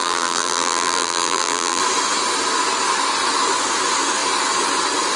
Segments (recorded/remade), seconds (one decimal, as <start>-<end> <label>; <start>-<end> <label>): 0.0-1.8 remade; 1.8-5.2 recorded